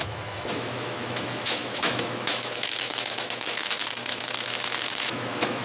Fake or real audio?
fake